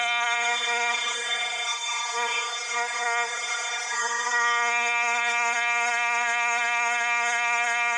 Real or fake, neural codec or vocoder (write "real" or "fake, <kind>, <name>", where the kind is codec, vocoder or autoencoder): fake, codec, SNAC